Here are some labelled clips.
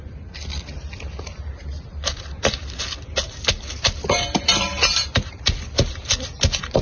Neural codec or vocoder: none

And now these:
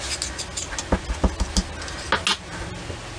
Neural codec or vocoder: none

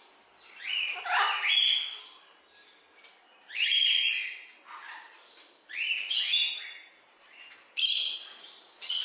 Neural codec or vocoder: none